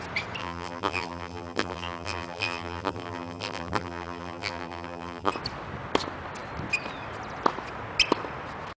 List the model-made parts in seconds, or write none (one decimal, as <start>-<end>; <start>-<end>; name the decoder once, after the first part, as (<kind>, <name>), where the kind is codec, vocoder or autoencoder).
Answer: 0.4-5.3 (vocoder, BigVGAN v2)